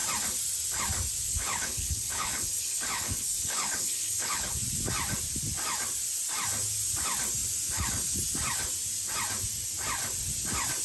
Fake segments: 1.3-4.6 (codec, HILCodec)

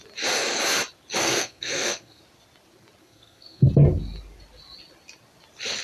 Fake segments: 1.2-2.2 (codec, SNAC); 3.0-3.7

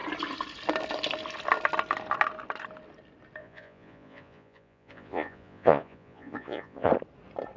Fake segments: 3.4-6.9 (vocoder, Vocos)

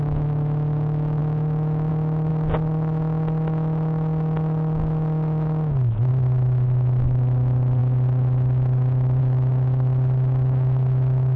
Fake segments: none

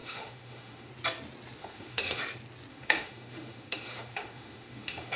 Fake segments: 0.0-0.9 (autoencoder, DAC-VAE); 1.6-2.2; 2.7-5.2

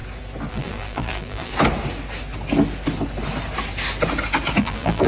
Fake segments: 0.5-1.5 (vocoder, BigVGAN v2); 4.6-5.1

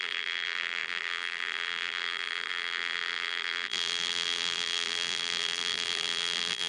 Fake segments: 0.0-6.7 (vocoder, BigVGAN v2)